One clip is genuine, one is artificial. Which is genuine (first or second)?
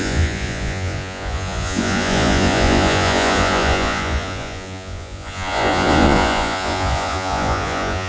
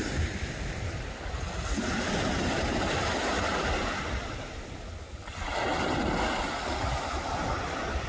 second